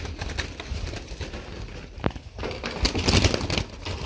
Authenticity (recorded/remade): recorded